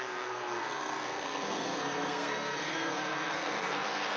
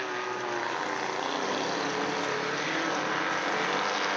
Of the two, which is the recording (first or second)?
second